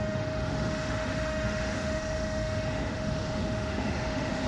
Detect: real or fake fake